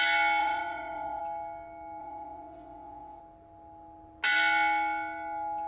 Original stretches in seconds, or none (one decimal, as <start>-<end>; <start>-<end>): 0.0-0.4; 1.2-2.0; 3.2-5.7

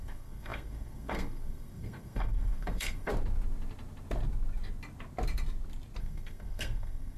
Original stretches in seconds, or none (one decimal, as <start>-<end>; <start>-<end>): 3.1-6.0